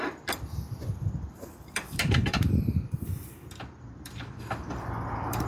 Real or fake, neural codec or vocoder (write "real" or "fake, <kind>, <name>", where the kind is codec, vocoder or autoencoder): fake, vocoder, BigVGAN v2